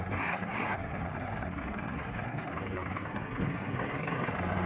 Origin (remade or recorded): remade